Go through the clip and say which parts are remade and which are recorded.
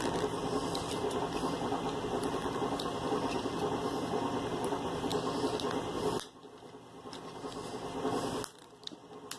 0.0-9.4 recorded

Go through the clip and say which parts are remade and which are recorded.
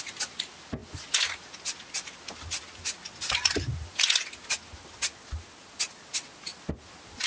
0.0-7.3 recorded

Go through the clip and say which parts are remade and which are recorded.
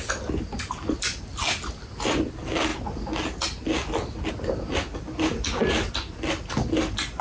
0.0-7.2 recorded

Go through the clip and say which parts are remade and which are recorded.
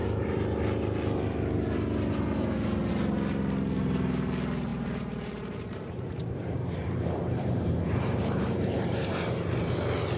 0.0-4.7 recorded; 4.7-9.3 remade; 9.3-10.2 recorded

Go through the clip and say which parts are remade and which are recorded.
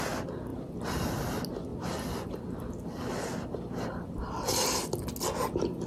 0.0-0.5 recorded; 0.5-1.1 remade; 1.1-1.7 recorded; 1.7-5.1 remade; 5.1-5.9 recorded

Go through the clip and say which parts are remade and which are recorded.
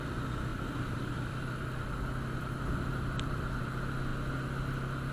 0.0-0.5 recorded; 0.5-3.6 remade; 3.6-5.1 recorded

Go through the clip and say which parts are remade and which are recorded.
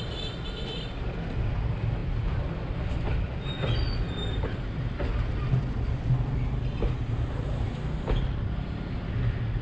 0.0-9.6 recorded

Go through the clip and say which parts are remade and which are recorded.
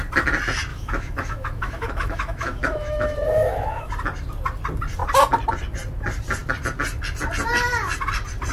0.0-0.7 recorded; 0.7-3.9 remade; 3.9-8.5 recorded